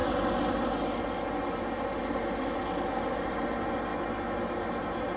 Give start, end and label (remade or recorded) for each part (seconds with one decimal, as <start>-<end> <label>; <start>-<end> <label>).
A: 0.0-3.9 recorded; 3.9-4.8 remade; 4.8-5.2 recorded